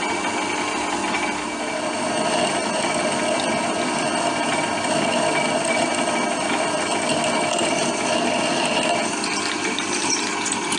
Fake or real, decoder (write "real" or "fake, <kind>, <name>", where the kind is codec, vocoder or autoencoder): real